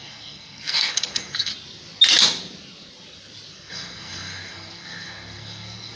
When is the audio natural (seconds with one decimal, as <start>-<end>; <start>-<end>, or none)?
1.5-3.5